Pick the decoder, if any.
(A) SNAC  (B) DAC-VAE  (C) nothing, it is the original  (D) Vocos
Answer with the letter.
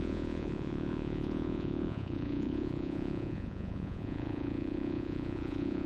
D